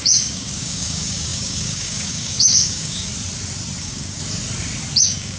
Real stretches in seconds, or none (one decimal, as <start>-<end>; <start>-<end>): 3.1-3.8; 4.2-5.0